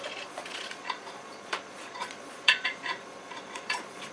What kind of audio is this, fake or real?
fake